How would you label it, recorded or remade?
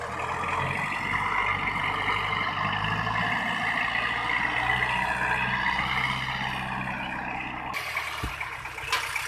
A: recorded